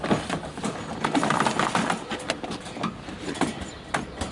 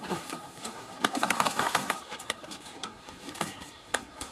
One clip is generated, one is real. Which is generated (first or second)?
second